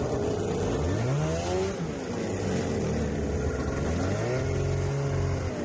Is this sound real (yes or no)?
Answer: yes